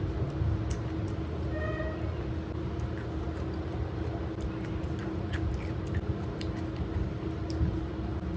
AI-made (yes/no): no